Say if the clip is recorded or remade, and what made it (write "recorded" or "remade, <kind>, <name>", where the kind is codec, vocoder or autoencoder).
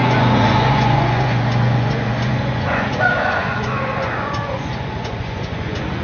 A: remade, vocoder, Vocos